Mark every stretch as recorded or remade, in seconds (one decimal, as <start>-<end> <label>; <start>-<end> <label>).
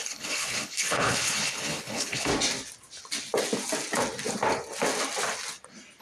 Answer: 0.0-2.3 remade; 2.3-6.0 recorded